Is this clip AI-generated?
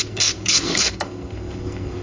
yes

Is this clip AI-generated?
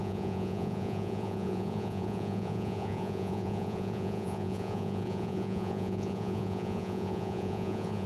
yes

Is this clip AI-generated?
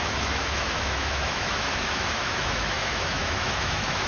yes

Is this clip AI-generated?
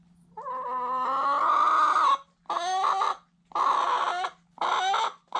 no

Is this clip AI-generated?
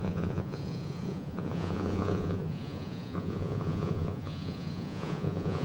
yes